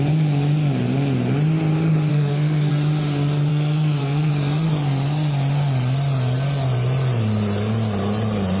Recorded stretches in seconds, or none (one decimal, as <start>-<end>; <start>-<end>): 0.0-2.1; 2.7-3.5; 4.3-8.6